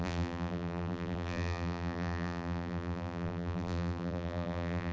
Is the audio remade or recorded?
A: remade